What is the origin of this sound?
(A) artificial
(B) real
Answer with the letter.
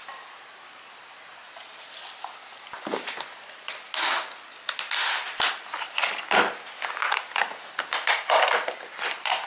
B